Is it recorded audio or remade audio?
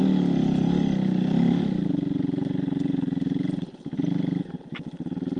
recorded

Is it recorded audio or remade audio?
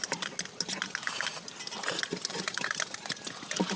recorded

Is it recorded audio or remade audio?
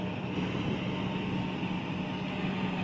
recorded